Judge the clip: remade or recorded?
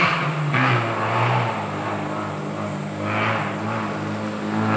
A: recorded